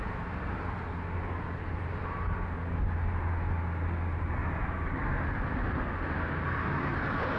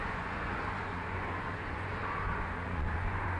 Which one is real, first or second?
first